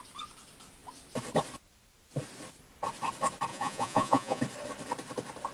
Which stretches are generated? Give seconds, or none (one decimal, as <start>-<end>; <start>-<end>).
3.5-4.4

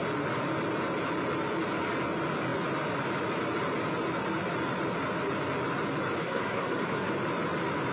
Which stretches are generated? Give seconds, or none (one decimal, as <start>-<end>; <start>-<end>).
6.2-7.1